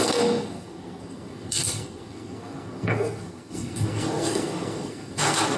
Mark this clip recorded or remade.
remade